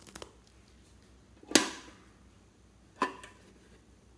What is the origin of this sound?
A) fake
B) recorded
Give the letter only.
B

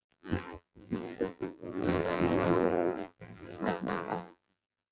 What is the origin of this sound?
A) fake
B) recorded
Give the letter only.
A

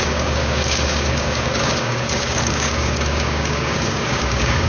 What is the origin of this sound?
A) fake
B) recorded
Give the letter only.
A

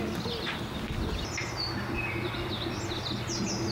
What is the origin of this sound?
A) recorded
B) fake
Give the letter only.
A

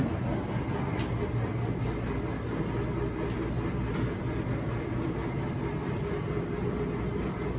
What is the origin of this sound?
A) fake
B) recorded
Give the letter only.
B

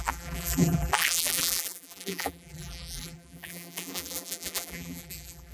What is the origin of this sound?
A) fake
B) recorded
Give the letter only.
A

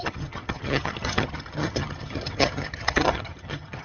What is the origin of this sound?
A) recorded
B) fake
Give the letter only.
B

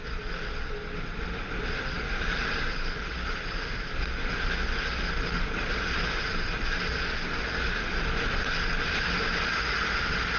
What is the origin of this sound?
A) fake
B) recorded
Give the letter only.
B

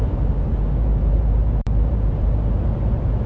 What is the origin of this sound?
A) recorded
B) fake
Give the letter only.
B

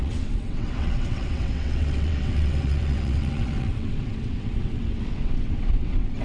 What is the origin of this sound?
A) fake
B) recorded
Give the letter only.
A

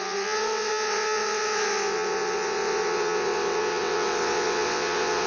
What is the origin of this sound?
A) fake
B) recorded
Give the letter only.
A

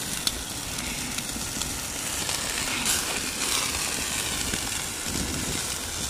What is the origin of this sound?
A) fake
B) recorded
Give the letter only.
B